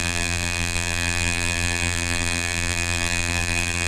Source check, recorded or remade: remade